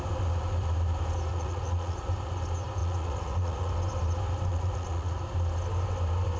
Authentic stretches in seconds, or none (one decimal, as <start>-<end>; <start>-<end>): 0.0-1.3; 2.1-2.8; 3.7-4.5; 5.2-6.4